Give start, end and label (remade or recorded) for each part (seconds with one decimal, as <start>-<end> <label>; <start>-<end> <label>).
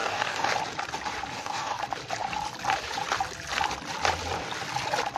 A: 0.0-0.5 remade; 0.5-1.3 recorded; 1.3-1.8 remade; 1.8-5.2 recorded